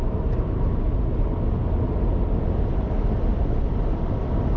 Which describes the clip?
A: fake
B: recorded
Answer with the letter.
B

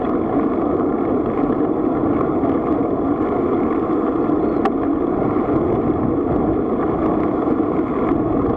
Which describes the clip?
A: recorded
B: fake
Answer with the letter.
A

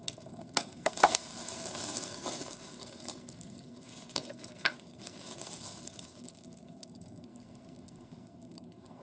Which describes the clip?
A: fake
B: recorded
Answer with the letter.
A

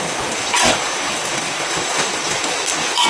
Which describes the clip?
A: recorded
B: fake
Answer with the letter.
A